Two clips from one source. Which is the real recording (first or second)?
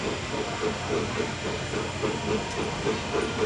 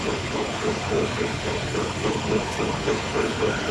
first